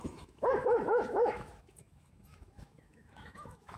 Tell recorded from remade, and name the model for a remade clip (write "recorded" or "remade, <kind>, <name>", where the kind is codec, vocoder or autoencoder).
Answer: remade, autoencoder, DAC-VAE